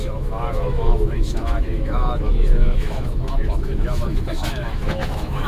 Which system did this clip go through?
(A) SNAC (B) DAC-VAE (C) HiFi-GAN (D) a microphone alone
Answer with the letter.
B